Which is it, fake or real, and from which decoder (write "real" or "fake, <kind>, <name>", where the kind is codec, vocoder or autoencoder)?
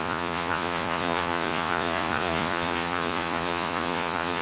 fake, vocoder, Vocos